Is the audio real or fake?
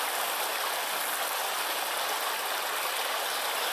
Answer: real